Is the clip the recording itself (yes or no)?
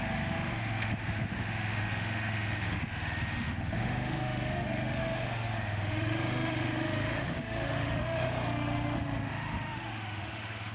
no